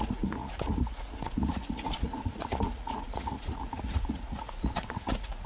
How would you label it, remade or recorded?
remade